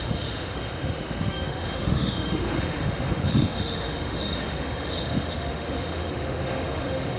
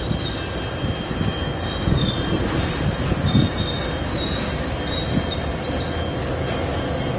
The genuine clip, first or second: second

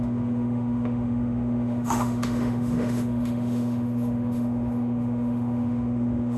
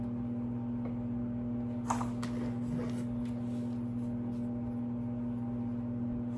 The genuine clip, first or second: second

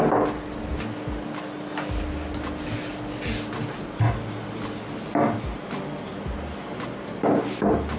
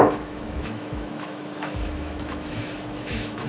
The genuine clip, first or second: first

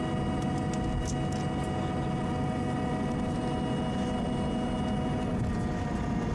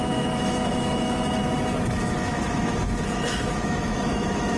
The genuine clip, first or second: first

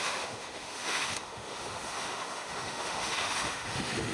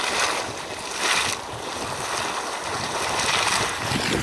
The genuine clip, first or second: second